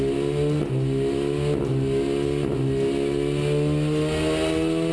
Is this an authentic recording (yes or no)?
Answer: yes